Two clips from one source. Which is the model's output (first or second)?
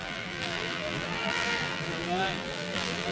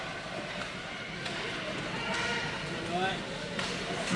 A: first